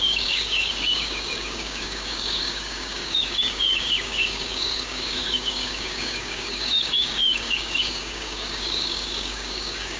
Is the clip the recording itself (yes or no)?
no